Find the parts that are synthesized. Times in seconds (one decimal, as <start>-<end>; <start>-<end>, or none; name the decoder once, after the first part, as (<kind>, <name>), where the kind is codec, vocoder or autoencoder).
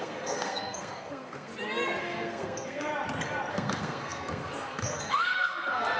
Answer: 0.0-1.5 (codec, SNAC); 2.0-2.9; 3.5-6.0